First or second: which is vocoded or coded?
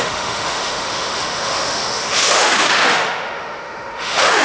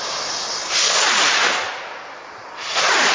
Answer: first